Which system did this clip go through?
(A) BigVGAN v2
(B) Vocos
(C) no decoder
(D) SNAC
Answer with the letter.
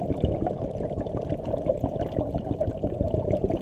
C